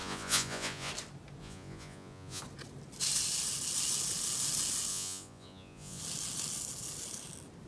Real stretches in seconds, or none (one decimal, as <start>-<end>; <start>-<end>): 0.9-1.4; 2.4-4.9; 6.0-7.7